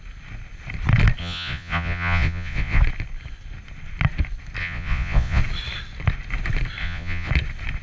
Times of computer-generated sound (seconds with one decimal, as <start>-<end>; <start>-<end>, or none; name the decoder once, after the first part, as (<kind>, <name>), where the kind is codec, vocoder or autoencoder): 1.2-2.8 (vocoder, Vocos); 4.6-5.4; 6.8-7.3